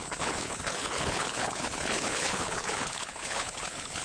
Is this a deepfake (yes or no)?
yes